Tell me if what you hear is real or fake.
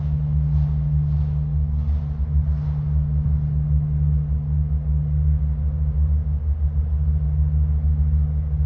real